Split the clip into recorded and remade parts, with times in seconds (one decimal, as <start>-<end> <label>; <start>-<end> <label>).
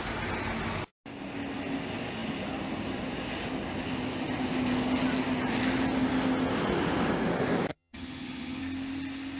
0.0-7.7 recorded; 7.7-8.6 remade; 8.6-9.4 recorded